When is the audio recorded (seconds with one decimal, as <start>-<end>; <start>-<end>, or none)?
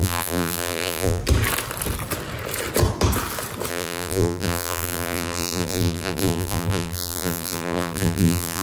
1.2-3.7